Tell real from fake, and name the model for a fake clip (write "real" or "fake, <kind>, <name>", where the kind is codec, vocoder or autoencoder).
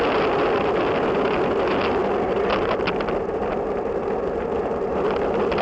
real